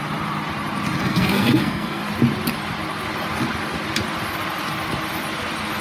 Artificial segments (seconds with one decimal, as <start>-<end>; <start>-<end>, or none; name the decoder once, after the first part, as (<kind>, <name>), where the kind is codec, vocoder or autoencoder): 1.0-2.0 (codec, SNAC)

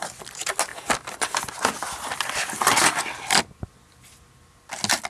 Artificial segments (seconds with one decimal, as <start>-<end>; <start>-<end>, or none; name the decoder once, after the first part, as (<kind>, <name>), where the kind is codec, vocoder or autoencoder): none

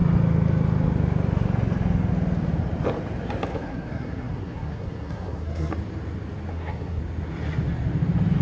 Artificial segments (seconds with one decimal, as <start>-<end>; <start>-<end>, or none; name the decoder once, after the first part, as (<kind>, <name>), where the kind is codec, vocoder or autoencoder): 3.5-5.7 (codec, SNAC); 6.5-7.0